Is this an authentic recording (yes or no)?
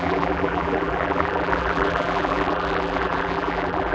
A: no